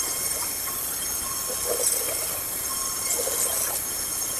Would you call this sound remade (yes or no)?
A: no